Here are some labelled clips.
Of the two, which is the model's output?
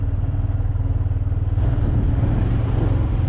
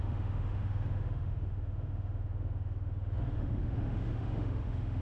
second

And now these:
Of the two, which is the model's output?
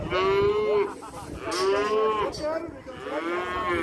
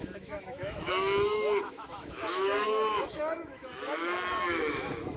second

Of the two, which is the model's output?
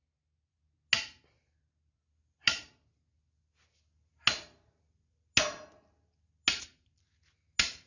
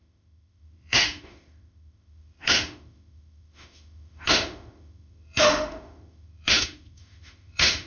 second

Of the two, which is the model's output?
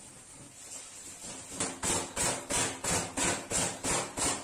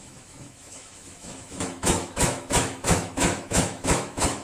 second